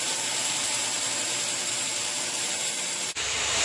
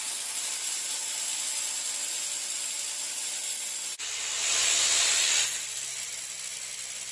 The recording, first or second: second